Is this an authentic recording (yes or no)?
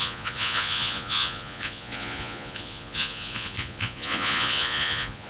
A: no